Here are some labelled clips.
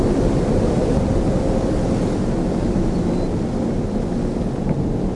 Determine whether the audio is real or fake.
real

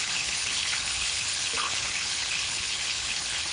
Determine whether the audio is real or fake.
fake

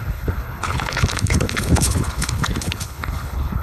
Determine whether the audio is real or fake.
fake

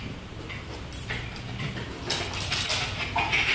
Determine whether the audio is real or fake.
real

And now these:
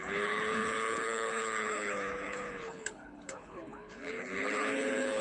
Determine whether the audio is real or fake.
fake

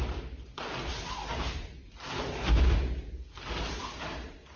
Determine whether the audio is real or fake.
real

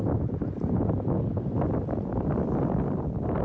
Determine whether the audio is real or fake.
real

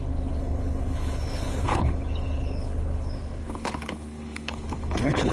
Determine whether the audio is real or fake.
fake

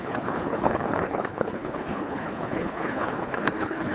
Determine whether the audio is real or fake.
fake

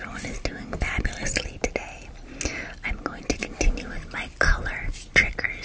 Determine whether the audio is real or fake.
real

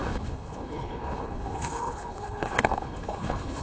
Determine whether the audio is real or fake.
fake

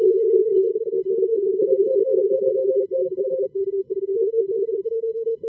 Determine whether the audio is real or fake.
fake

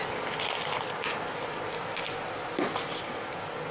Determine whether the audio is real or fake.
real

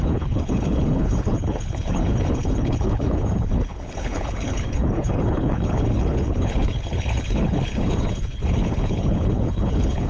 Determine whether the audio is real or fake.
fake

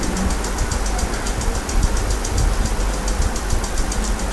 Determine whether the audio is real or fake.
real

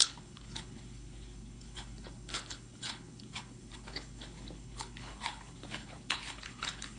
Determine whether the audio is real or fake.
fake